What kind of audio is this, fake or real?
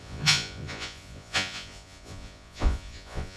fake